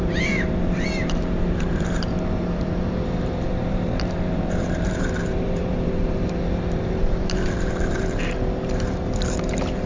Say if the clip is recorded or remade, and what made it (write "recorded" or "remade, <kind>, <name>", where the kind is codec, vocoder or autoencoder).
remade, vocoder, BigVGAN v2